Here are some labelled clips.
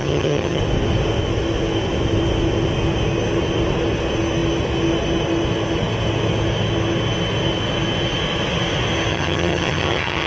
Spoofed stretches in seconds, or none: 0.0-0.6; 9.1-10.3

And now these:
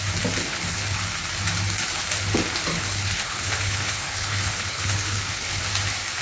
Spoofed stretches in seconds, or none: 0.4-1.0; 2.7-5.6